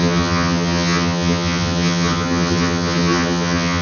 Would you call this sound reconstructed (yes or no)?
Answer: yes